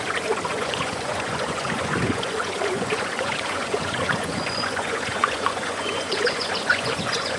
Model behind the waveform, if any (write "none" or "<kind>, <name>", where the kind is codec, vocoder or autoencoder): vocoder, Vocos